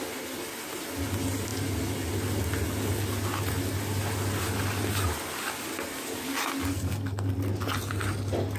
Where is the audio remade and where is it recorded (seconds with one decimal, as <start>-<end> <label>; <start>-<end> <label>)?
0.0-6.7 recorded; 6.7-7.3 remade; 7.3-8.6 recorded